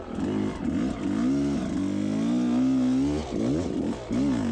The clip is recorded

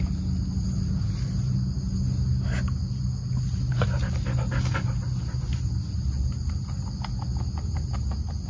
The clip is recorded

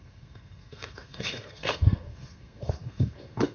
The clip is remade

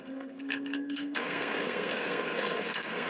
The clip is remade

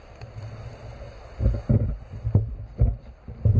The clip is recorded